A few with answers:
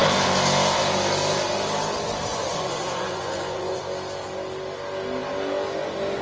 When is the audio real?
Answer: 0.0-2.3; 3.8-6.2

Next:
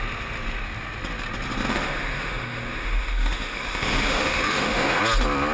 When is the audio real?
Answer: 0.0-1.7; 5.0-5.5

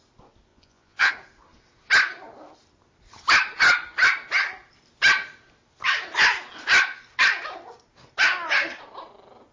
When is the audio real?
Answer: 0.0-0.5; 1.1-9.5

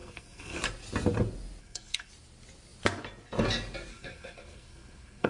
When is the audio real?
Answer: 0.6-1.6; 2.1-3.9

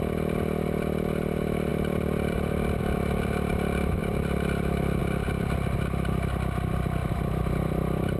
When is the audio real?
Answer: 0.0-1.7; 2.8-4.0; 5.0-7.0; 7.6-8.2